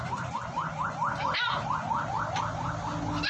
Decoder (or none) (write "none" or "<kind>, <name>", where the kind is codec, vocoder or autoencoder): none